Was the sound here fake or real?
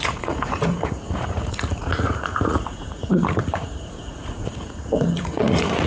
fake